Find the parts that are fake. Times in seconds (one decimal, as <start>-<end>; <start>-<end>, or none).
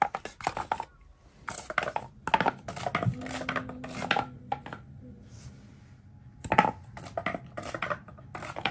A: none